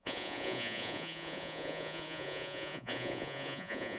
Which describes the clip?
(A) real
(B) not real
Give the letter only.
B